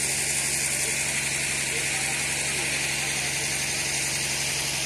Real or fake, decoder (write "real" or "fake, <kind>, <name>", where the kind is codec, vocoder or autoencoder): real